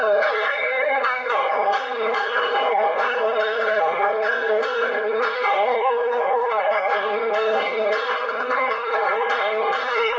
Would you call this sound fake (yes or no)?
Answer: yes